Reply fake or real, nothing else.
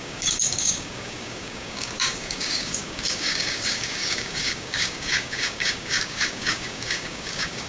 fake